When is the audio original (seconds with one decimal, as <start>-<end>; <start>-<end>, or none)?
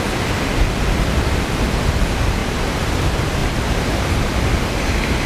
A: 0.0-2.4; 3.0-3.4; 4.1-5.3